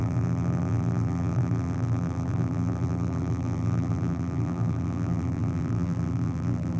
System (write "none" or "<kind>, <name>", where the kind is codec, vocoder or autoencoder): vocoder, BigVGAN v2